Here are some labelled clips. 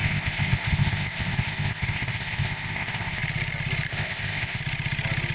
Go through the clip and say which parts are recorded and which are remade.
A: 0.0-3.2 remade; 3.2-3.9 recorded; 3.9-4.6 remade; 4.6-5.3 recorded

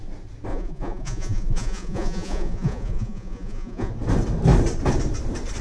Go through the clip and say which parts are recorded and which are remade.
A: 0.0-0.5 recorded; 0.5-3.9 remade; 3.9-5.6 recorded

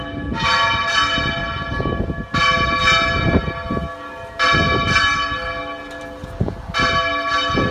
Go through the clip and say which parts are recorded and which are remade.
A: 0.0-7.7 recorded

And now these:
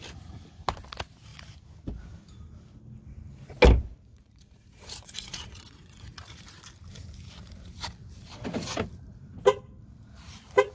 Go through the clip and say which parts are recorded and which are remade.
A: 0.0-4.1 recorded; 4.1-6.4 remade; 6.4-10.7 recorded

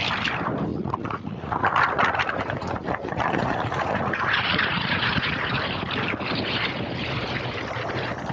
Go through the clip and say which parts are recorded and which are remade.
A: 0.0-0.7 recorded; 0.7-5.4 remade; 5.4-8.3 recorded

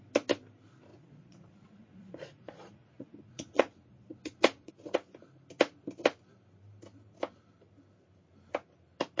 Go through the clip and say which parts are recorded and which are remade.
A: 0.0-0.9 recorded; 0.9-4.7 remade; 4.7-9.2 recorded